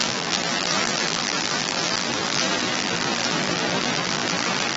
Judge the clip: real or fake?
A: fake